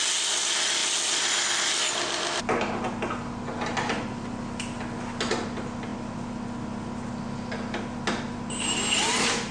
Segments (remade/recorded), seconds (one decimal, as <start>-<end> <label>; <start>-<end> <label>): 0.0-9.5 recorded